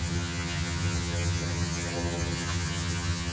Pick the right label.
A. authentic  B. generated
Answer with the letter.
B